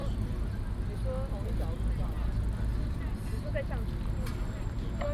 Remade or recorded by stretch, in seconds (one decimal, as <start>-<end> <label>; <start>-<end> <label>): 0.0-2.0 recorded; 2.0-3.5 remade; 3.5-5.1 recorded